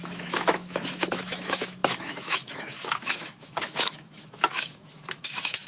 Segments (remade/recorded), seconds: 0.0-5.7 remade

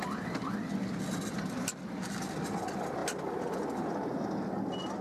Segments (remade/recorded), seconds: 0.0-5.0 recorded

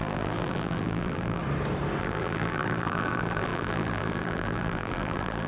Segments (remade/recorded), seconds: 0.0-1.4 remade; 1.4-2.0 recorded; 2.0-5.5 remade

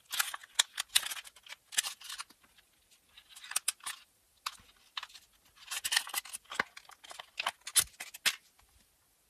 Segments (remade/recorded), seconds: 0.0-9.3 recorded